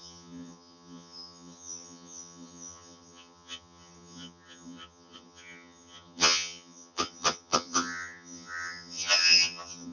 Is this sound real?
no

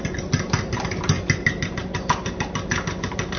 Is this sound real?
yes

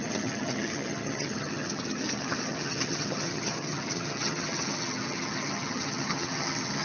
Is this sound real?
no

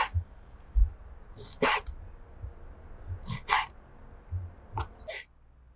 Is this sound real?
yes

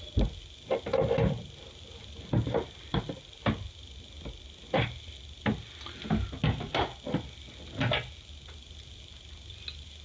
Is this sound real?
yes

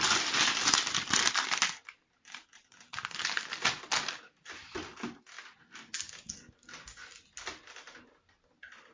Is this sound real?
yes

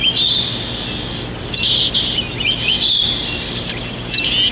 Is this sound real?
yes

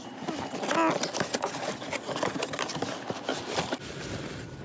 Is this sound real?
yes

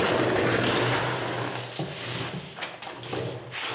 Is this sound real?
yes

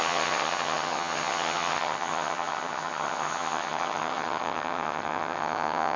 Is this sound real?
no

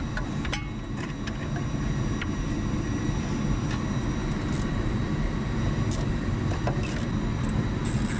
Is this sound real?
yes